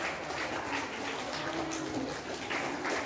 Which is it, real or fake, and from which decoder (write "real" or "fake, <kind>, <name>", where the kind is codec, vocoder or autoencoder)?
real